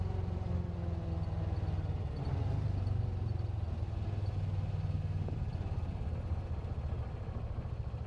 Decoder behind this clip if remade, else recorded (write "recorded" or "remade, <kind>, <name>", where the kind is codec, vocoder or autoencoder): recorded